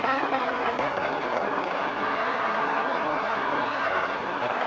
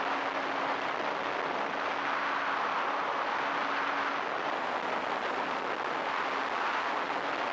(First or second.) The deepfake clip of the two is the first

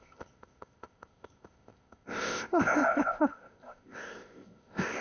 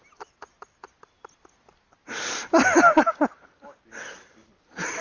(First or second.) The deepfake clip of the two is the first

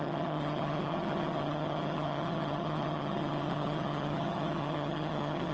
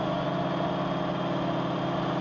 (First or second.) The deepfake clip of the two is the first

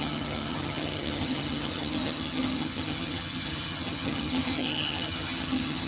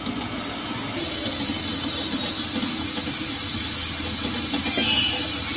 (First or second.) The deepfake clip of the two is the first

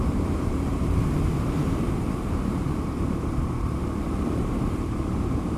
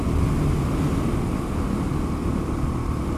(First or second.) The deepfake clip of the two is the first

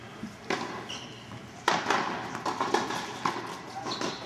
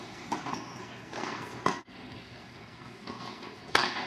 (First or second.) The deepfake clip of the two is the second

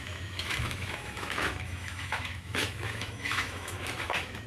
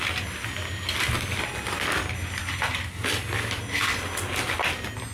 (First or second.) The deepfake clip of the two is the first